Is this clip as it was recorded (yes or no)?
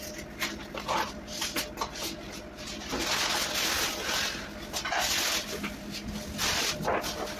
yes